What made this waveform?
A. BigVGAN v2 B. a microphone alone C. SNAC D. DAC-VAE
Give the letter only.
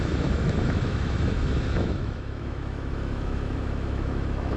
D